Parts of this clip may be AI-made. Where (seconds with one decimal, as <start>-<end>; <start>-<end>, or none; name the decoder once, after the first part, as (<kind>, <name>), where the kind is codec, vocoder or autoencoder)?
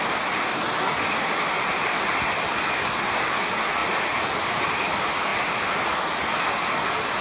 none